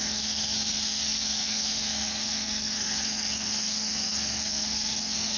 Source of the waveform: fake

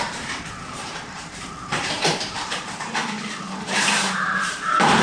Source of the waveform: fake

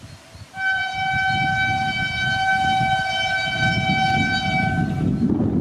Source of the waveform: real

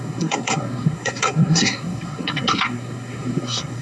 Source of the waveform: fake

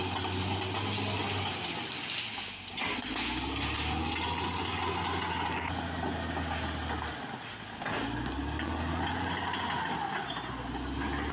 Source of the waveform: real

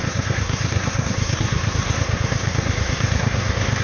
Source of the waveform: fake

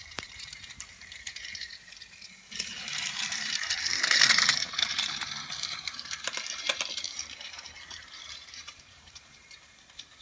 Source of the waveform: fake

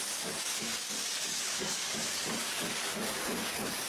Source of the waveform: fake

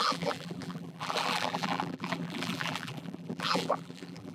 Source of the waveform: fake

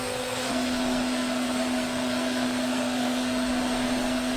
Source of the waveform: fake